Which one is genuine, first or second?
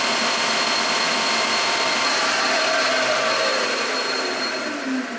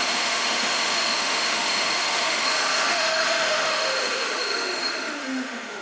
first